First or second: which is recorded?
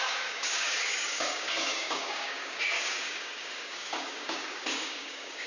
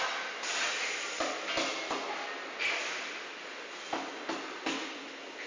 second